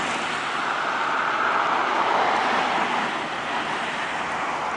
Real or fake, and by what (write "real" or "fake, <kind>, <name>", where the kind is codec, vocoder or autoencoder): real